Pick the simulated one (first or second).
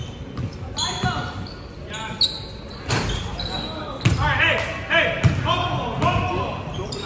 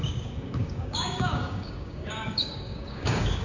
second